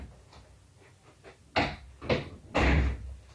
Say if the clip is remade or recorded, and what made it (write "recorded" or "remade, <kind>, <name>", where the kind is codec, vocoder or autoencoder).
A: recorded